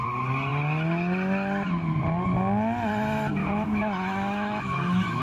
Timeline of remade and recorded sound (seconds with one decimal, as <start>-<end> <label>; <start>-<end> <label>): 0.0-3.4 recorded; 3.4-5.2 remade